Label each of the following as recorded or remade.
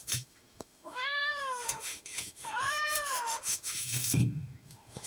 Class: remade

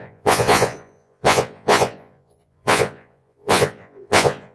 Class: remade